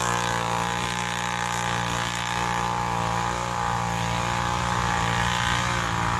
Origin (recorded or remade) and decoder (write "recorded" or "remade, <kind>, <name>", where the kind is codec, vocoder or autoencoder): recorded